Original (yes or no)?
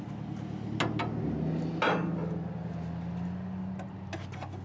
yes